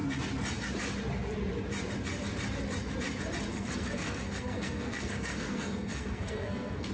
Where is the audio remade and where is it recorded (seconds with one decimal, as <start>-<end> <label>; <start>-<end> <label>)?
0.0-3.5 recorded; 3.5-6.9 remade

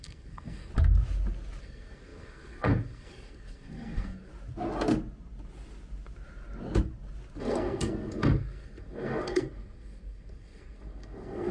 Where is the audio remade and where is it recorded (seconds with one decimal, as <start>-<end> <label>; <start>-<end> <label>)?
0.0-0.7 remade; 0.7-1.6 recorded; 1.6-4.3 remade; 4.3-7.4 recorded; 7.4-11.5 remade